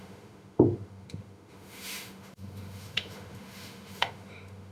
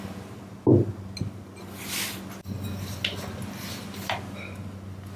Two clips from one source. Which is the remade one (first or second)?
first